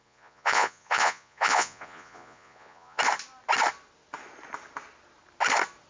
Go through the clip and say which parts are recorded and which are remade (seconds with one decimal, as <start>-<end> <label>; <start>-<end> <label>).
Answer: 0.0-3.0 remade; 3.0-5.9 recorded